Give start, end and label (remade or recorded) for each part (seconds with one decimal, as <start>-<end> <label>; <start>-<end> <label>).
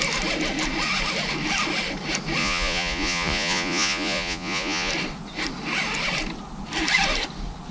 0.0-2.4 recorded; 2.4-4.9 remade; 4.9-7.7 recorded